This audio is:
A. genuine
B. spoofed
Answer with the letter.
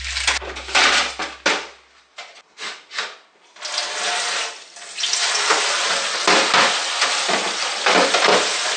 A